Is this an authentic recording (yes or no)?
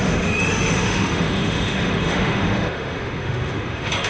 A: no